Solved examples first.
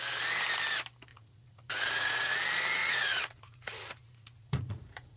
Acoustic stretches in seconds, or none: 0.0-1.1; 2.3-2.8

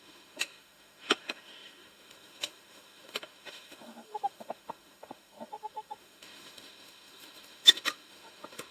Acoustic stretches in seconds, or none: none

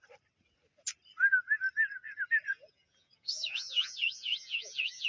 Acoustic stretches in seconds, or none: 0.0-2.5